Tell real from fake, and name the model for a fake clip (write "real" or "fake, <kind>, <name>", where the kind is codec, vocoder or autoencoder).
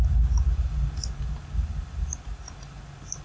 real